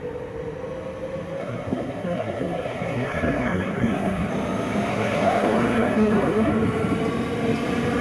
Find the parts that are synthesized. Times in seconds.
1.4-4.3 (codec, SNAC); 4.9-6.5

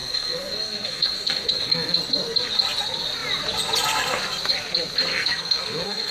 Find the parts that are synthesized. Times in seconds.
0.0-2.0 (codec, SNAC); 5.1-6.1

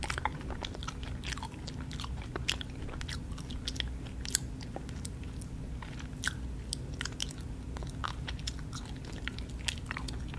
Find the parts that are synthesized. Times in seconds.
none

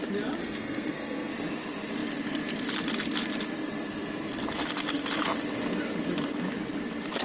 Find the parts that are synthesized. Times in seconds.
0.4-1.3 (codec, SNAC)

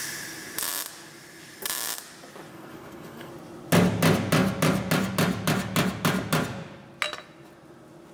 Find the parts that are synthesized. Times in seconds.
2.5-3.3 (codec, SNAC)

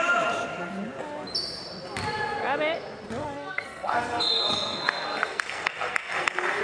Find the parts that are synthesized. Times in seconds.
3.2-6.6 (codec, SNAC)